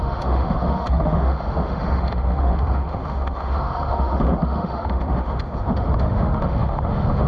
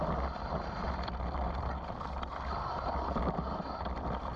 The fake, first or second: first